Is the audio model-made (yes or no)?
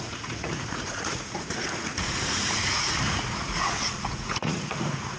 yes